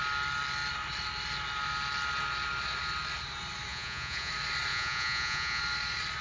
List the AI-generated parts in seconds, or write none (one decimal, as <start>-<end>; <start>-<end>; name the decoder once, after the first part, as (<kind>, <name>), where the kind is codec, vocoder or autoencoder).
3.7-4.3 (vocoder, Vocos); 4.7-5.6